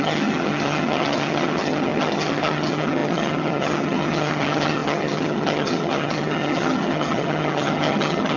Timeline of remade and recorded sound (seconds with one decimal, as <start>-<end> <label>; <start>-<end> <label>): 0.0-8.4 remade